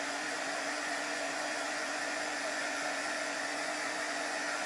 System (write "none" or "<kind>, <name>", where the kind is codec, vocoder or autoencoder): vocoder, Vocos